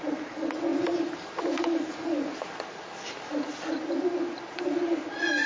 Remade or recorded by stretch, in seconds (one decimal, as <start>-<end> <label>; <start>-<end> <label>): 0.0-5.5 recorded